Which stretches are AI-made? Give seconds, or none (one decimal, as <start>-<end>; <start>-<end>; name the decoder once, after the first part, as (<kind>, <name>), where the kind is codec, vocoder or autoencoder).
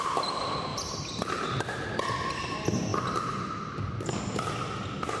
none